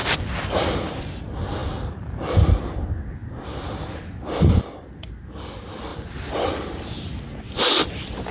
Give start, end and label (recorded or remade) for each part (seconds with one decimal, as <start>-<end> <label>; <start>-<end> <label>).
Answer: 0.0-1.2 remade; 1.2-1.6 recorded; 1.6-2.6 remade; 2.6-3.2 recorded; 3.2-5.2 remade; 5.2-8.3 recorded